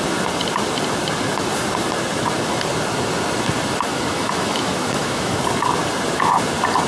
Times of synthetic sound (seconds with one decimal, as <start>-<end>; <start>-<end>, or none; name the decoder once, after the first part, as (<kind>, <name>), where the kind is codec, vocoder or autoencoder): 3.9-5.4 (autoencoder, DAC-VAE)